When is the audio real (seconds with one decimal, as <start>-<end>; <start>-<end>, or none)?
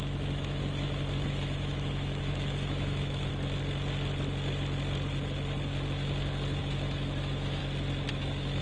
3.3-6.6; 7.6-8.1